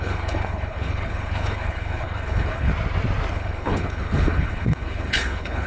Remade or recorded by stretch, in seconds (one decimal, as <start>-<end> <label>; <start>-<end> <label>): 0.0-2.7 remade; 2.7-3.3 recorded; 3.3-5.7 remade